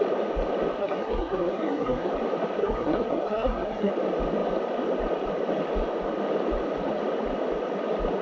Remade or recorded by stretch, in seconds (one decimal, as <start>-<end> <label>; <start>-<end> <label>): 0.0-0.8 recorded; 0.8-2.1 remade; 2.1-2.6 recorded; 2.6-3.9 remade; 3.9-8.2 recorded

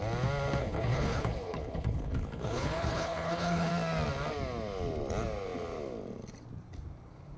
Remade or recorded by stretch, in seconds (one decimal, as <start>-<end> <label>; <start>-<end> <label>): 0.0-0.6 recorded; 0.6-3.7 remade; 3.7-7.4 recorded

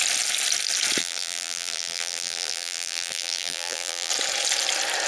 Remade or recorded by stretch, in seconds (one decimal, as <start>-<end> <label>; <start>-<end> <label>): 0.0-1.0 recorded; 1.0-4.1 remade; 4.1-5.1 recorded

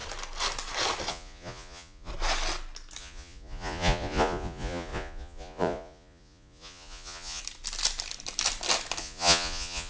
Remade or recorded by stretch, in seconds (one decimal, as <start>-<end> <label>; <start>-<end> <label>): 0.0-1.1 recorded; 1.1-2.1 remade; 2.1-3.0 recorded; 3.0-7.4 remade; 7.4-9.0 recorded; 9.0-9.9 remade